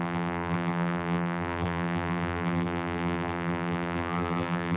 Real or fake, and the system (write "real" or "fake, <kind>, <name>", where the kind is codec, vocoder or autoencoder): fake, vocoder, BigVGAN v2